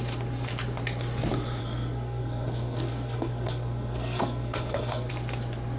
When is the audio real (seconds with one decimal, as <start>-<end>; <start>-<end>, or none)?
0.0-1.6; 5.1-5.8